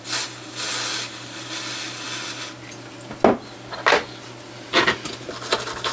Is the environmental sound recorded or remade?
recorded